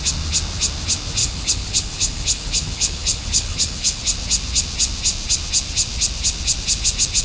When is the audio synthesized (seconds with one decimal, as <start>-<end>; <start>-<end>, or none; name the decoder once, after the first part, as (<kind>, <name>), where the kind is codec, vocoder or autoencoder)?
1.2-4.0 (codec, HILCodec)